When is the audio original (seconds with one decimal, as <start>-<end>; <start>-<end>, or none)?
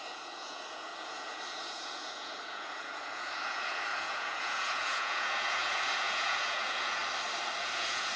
7.0-7.6